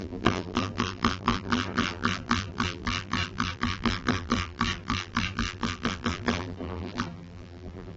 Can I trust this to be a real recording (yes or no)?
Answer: no